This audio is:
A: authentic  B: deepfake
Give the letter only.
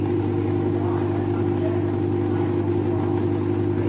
A